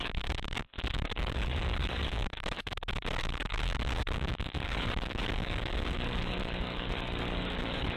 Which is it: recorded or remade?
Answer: remade